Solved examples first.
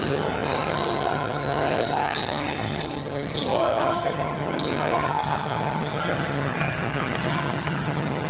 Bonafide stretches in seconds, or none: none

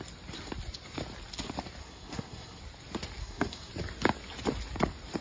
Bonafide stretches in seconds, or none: 0.0-1.8; 2.6-3.2; 3.7-5.2

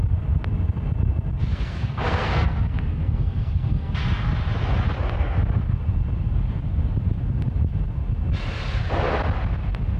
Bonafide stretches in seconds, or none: 0.0-1.5; 3.9-10.0